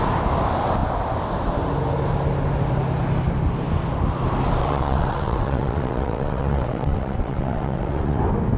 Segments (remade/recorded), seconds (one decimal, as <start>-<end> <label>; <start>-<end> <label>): 0.0-4.6 recorded; 4.6-8.2 remade; 8.2-8.6 recorded

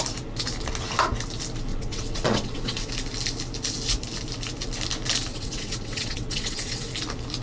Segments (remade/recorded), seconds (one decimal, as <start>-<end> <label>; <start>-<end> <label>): 0.0-1.7 recorded; 1.7-2.9 remade; 2.9-5.3 recorded; 5.3-6.9 remade; 6.9-7.4 recorded

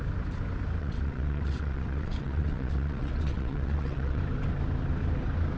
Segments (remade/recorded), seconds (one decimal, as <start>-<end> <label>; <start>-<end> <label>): 0.0-0.8 recorded; 0.8-4.2 remade; 4.2-5.6 recorded

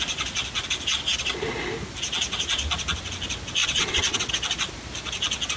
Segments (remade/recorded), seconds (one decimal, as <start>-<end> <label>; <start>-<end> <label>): 0.0-3.6 recorded; 3.6-4.3 remade; 4.3-5.6 recorded